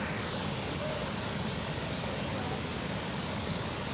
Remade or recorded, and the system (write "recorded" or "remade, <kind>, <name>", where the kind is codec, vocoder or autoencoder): remade, codec, DAC